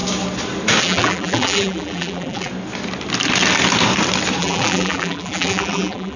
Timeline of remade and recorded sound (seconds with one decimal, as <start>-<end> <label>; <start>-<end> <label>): 0.0-0.8 recorded; 0.8-2.5 remade; 2.5-4.4 recorded; 4.4-6.2 remade